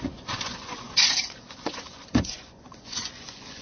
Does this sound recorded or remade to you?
remade